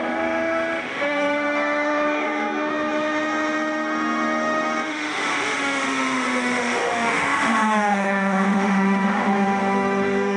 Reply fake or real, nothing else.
fake